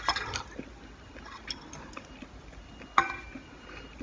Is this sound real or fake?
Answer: real